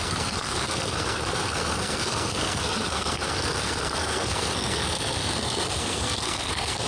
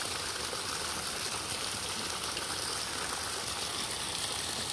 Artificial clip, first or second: first